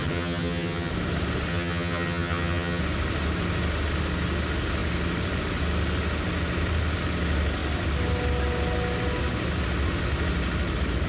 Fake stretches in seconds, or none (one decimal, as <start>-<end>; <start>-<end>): 0.0-0.9; 1.5-2.8